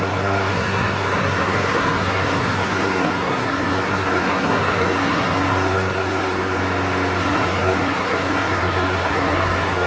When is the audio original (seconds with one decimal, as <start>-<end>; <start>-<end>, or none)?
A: 6.6-7.2

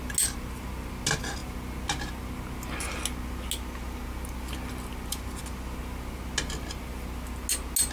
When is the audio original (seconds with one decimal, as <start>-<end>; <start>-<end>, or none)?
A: 0.0-7.9

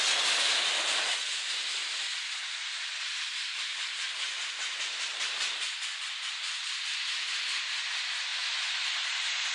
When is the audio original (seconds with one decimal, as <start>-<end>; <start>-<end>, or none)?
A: 0.0-9.5

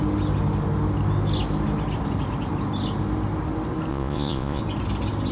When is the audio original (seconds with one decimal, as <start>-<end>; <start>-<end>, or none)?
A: 0.0-3.9; 4.6-5.3

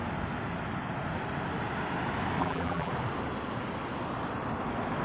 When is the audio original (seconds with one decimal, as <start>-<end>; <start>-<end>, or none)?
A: 0.0-2.4; 2.9-5.0

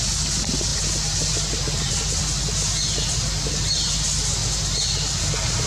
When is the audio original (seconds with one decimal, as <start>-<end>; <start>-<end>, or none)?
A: 0.0-5.7

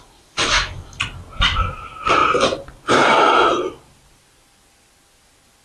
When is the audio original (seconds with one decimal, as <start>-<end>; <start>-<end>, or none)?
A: 0.0-5.6

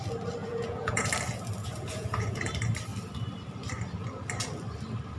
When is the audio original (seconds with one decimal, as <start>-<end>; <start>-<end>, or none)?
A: 0.0-0.4; 1.1-1.6; 2.5-5.2